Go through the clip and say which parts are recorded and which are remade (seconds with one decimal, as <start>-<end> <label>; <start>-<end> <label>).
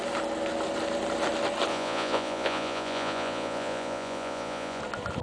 0.0-1.7 recorded; 1.7-4.8 remade; 4.8-5.2 recorded